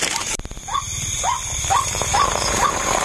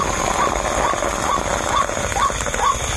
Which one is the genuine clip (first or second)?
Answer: second